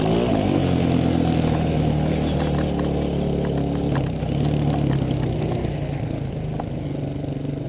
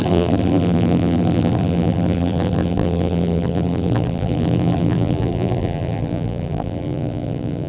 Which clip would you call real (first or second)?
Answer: first